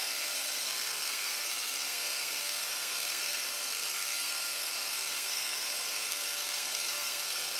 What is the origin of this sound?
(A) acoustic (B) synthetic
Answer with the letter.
B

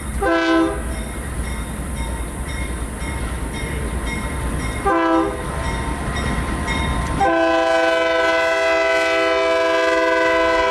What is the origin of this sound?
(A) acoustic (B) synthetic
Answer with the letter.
A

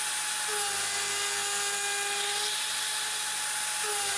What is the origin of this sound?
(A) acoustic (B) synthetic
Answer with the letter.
A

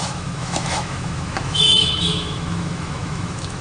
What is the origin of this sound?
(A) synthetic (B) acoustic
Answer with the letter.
A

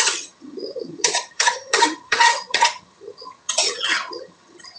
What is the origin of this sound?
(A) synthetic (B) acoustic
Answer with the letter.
A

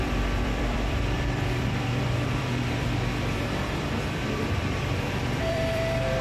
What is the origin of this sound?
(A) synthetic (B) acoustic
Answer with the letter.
A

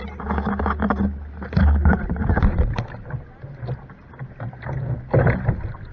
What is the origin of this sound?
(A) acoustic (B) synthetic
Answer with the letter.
A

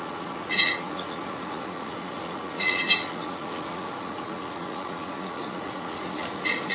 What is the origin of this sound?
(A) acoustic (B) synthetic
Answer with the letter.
B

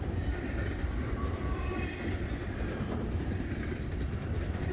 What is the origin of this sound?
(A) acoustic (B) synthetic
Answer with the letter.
B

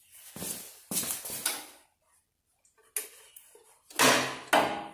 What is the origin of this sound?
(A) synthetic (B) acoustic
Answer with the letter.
B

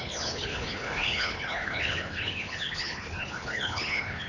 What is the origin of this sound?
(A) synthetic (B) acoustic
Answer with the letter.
A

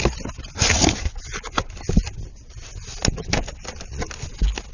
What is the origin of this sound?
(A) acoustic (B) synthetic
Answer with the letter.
A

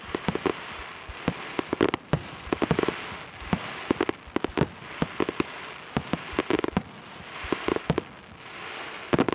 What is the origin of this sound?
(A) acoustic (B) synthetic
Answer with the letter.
A